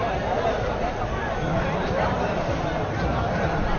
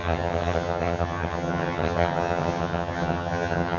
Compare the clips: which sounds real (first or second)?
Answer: first